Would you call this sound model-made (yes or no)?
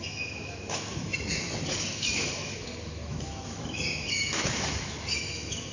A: yes